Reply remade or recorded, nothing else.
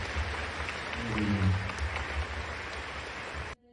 recorded